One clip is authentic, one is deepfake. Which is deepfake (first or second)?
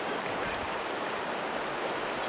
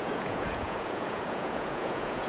second